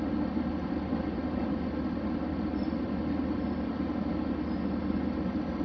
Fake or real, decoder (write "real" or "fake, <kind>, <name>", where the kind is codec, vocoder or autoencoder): real